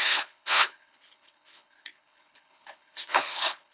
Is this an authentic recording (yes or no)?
no